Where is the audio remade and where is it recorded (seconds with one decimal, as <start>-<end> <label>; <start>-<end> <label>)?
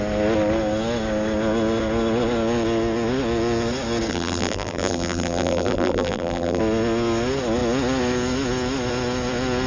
0.0-4.1 recorded; 4.1-6.6 remade; 6.6-9.7 recorded